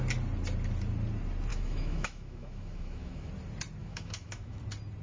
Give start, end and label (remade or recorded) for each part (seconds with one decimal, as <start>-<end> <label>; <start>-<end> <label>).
0.0-1.5 recorded; 1.5-3.3 remade; 3.3-3.8 recorded; 3.8-4.6 remade; 4.6-5.0 recorded